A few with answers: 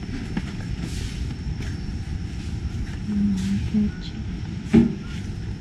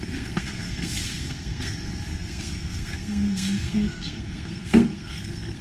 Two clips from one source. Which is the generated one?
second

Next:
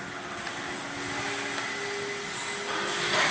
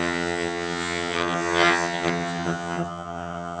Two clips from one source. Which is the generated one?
second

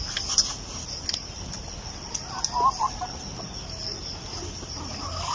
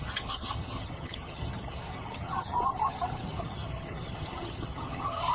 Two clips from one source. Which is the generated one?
second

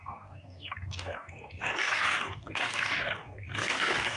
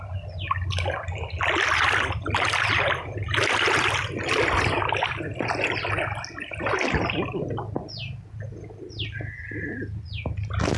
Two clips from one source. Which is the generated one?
first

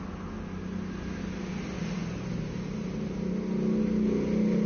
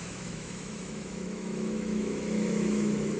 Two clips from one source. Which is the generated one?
second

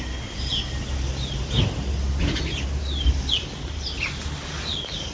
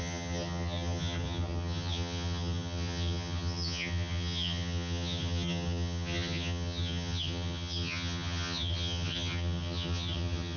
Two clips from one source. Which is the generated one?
second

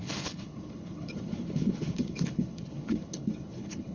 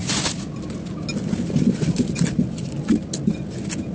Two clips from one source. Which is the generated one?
first